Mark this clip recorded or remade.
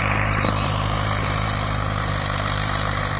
remade